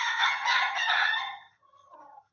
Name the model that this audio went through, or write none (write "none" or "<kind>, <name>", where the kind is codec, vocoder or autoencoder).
vocoder, HiFi-GAN